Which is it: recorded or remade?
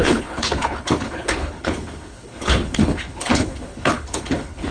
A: remade